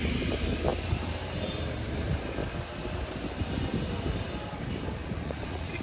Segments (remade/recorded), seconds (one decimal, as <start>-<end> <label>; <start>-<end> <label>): 0.0-5.0 recorded; 5.0-5.8 remade